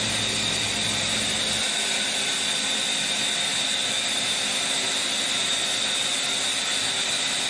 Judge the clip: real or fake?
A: real